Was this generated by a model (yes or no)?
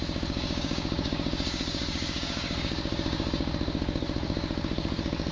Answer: yes